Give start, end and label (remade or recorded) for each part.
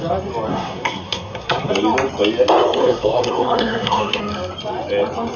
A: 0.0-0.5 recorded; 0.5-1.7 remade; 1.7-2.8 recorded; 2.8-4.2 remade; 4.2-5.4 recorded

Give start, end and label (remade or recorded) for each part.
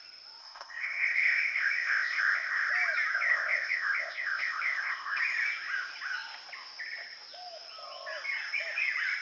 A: 0.0-0.4 recorded; 0.4-2.7 remade; 2.7-3.3 recorded; 3.3-5.2 remade; 5.2-9.2 recorded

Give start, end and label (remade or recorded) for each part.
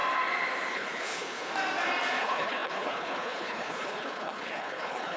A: 0.0-0.7 recorded; 0.7-1.5 remade; 1.5-2.2 recorded; 2.2-5.2 remade